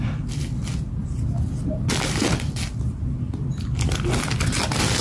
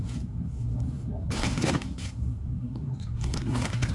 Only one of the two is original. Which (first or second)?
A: first